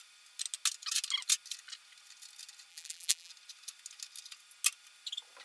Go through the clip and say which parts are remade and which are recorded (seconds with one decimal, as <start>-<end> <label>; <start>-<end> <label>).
0.0-2.7 recorded; 2.7-3.3 remade; 3.3-5.4 recorded